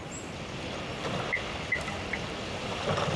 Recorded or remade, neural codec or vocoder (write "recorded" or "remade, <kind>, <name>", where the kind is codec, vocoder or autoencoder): recorded